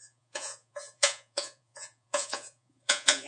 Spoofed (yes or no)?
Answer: yes